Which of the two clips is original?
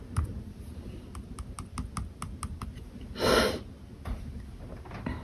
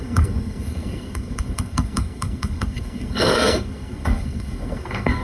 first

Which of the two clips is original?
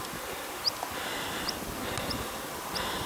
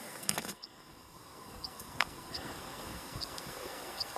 first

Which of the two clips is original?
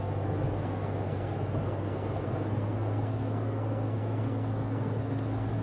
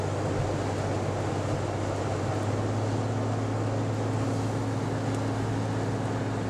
second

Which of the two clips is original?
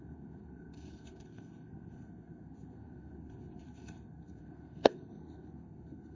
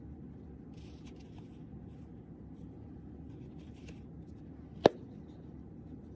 second